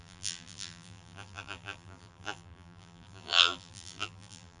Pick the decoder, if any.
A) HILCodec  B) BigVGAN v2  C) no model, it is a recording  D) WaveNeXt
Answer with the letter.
B